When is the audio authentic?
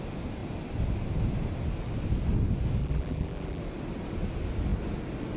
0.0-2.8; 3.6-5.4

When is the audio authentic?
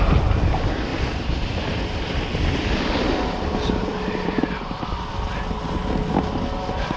0.0-0.9; 5.1-7.0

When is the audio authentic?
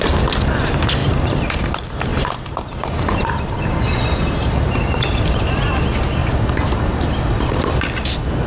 0.0-1.0; 1.7-2.1; 5.7-6.2; 7.6-8.5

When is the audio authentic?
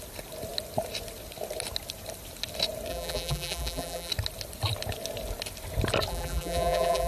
0.0-2.9; 4.1-6.1